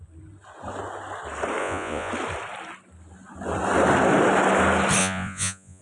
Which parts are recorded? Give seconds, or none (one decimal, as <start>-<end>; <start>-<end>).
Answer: 0.0-1.6; 2.1-5.0